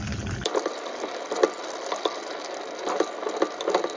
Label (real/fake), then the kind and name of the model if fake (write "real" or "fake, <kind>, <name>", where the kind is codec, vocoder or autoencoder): real